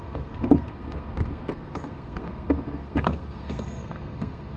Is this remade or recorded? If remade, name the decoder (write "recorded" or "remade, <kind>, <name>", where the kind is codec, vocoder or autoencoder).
remade, codec, SNAC